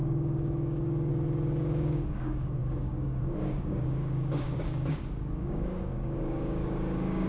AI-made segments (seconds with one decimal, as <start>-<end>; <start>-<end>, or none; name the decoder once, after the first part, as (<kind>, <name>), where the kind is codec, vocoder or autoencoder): 0.0-1.1 (codec, DAC); 1.6-7.3